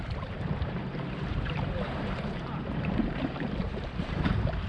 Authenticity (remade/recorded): remade